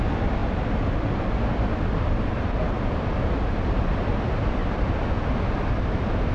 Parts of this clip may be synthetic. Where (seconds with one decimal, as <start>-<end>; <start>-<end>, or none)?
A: 4.6-5.1